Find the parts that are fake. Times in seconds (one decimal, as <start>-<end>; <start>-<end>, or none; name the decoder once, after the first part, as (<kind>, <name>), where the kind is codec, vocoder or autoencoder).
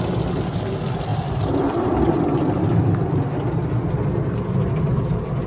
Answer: 1.1-2.2 (vocoder, BigVGAN v2)